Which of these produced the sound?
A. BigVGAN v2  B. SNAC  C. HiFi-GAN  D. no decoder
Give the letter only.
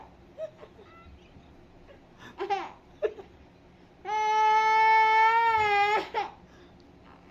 D